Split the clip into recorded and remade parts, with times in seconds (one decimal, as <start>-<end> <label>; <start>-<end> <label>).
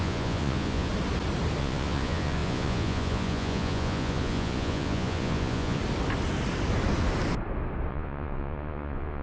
0.0-0.9 remade; 0.9-1.6 recorded; 1.6-5.8 remade; 5.8-7.9 recorded; 7.9-9.2 remade